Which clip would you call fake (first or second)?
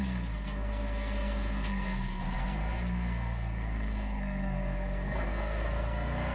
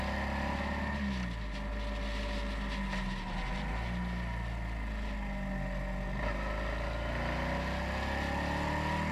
first